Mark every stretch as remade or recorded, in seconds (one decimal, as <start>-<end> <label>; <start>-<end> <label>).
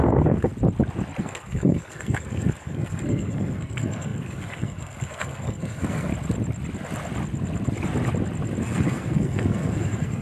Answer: 0.0-0.5 remade; 0.5-1.2 recorded; 1.2-6.1 remade; 6.1-8.6 recorded; 8.6-10.2 remade